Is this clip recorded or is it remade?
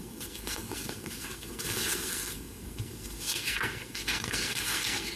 remade